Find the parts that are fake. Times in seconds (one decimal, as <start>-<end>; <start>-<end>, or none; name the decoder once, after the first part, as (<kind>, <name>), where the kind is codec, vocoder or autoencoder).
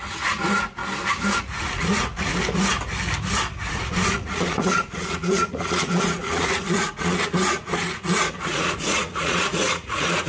0.0-0.8 (vocoder, Vocos); 1.4-2.3; 3.7-10.3